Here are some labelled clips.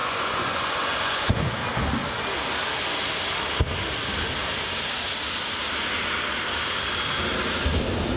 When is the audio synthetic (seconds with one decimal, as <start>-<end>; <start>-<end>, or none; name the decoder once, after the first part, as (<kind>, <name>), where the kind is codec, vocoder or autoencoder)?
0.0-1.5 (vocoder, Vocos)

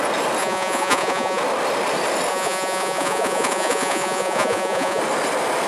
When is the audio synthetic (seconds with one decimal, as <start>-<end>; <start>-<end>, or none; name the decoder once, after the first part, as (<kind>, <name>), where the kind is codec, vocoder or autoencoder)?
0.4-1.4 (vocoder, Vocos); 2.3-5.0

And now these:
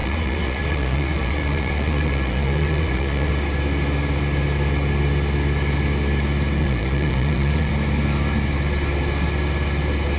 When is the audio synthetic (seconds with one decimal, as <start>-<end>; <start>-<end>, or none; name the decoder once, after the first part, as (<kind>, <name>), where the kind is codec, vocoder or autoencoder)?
0.0-3.3 (vocoder, Vocos); 6.6-7.7